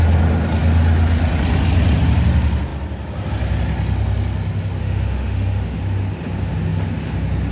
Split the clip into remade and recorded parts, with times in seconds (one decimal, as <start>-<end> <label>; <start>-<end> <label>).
0.0-4.8 recorded; 4.8-5.8 remade; 5.8-7.5 recorded